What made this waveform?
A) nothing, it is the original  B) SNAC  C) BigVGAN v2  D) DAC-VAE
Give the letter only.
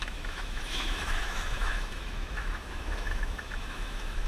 D